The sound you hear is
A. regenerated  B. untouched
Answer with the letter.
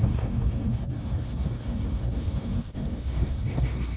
A